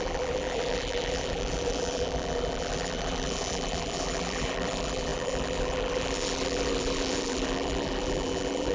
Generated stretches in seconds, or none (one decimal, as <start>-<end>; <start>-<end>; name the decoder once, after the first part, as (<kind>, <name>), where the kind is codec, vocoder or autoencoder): 0.0-8.7 (vocoder, BigVGAN v2)